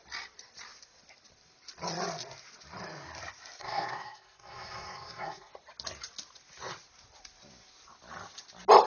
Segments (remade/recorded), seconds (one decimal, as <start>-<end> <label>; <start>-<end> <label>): 0.0-3.6 recorded; 3.6-5.5 remade; 5.5-8.9 recorded